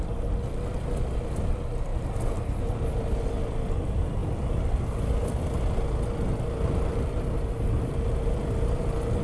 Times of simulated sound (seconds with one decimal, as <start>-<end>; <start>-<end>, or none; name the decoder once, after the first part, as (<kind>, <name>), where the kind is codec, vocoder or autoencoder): none